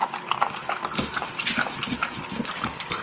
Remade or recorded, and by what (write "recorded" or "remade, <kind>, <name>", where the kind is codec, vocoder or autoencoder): recorded